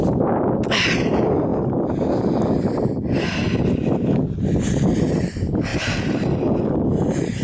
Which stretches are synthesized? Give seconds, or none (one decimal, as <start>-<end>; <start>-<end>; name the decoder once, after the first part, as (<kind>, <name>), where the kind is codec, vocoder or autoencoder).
none